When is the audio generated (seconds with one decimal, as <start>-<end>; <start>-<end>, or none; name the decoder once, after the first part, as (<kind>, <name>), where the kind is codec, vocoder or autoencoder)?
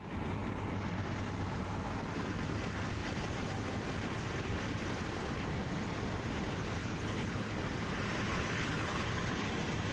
6.8-7.6 (codec, HILCodec); 8.3-9.5